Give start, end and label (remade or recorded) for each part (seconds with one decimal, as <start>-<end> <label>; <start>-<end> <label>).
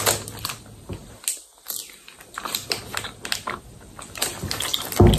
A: 0.0-5.2 recorded